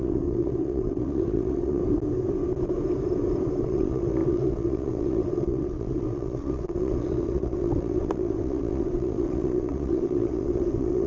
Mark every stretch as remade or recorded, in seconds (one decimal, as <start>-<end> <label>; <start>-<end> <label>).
0.0-1.8 remade; 1.8-3.6 recorded; 3.6-11.1 remade